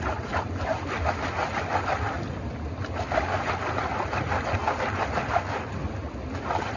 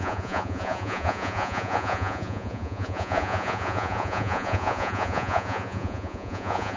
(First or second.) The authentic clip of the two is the first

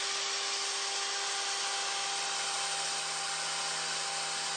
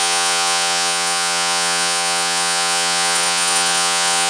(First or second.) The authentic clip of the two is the first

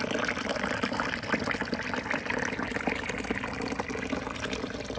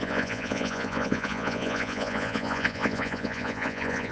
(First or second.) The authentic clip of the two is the first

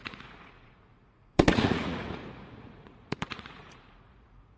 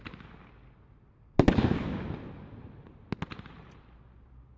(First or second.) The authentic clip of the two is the second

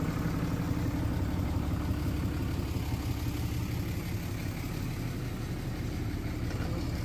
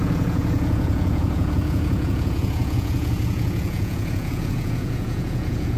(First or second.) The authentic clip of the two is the first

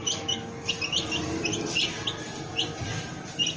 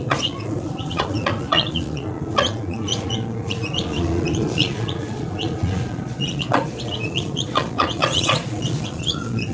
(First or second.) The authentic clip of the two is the first